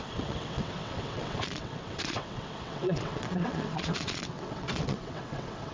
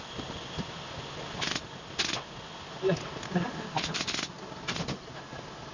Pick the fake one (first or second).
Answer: first